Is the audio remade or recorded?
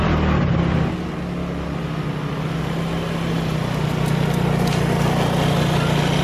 recorded